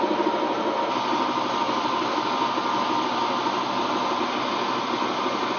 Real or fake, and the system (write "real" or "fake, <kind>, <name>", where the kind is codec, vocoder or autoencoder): real